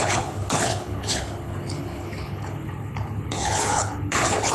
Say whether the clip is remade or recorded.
remade